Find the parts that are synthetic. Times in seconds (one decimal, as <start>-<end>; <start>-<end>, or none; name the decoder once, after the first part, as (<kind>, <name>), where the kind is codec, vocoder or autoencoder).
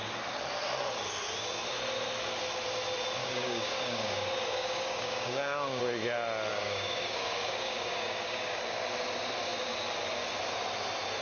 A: 3.2-5.8 (codec, DAC); 6.5-8.6